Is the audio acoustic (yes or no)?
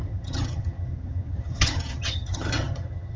no